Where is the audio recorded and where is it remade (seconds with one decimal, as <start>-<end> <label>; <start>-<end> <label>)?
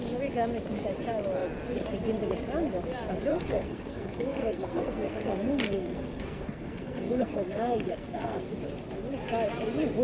0.0-3.3 recorded; 3.3-8.6 remade; 8.6-10.0 recorded